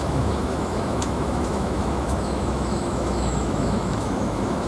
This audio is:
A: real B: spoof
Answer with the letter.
B